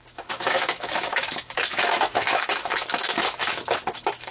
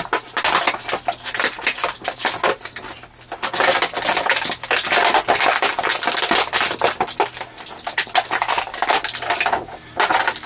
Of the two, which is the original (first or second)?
second